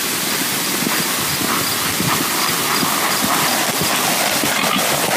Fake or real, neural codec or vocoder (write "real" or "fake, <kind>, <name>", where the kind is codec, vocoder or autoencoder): real